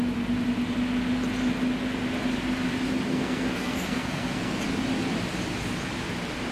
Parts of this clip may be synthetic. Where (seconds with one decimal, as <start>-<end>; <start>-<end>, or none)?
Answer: 3.1-4.6